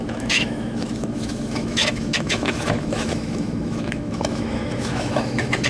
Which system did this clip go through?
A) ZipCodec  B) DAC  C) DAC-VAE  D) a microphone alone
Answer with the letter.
C